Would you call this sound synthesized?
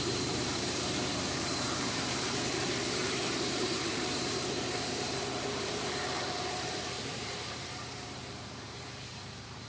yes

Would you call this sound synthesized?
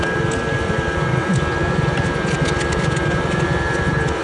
no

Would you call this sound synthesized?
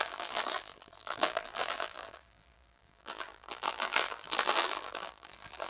yes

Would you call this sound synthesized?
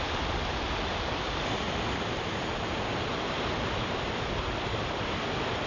no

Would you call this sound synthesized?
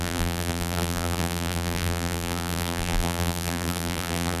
yes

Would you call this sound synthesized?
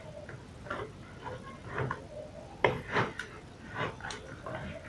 no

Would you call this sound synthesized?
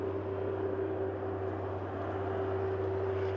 no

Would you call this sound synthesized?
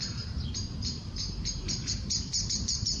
yes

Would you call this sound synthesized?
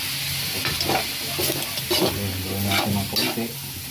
no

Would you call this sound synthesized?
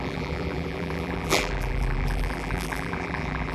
yes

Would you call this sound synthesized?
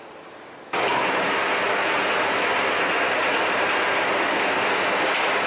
no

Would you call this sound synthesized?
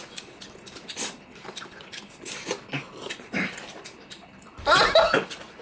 yes